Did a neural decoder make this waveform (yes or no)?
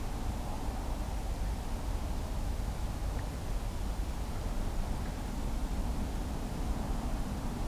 no